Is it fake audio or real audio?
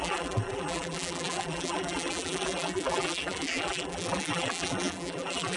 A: fake